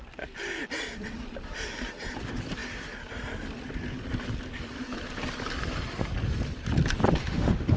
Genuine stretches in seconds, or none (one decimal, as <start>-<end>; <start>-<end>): 0.0-7.2

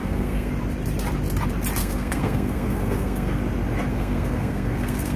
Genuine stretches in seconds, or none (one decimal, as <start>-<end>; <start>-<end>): 0.5-1.8; 3.4-3.9

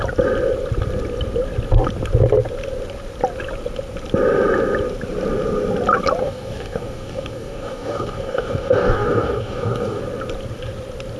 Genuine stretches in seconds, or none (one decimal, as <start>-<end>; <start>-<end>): 0.0-6.2; 10.0-11.2

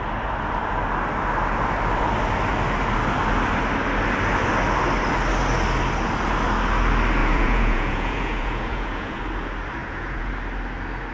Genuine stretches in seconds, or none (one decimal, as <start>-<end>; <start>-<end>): 0.0-7.2; 9.2-9.8; 10.3-11.1

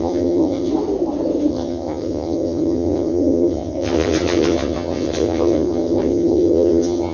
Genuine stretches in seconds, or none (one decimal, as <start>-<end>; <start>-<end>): 0.7-1.5

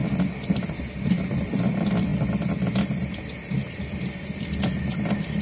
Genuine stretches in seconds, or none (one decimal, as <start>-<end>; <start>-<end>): 0.0-0.7

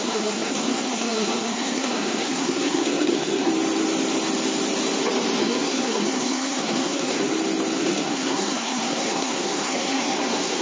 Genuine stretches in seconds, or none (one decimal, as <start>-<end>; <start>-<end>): 3.5-5.4; 7.3-7.8

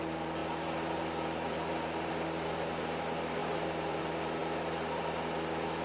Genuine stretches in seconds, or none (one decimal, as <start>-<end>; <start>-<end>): 0.0-3.4; 4.0-5.8